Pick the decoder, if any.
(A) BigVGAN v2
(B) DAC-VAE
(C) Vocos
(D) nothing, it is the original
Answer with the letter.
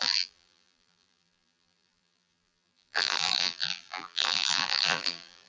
A